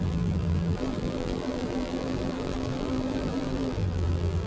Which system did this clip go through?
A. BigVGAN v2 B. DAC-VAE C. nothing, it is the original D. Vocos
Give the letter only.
A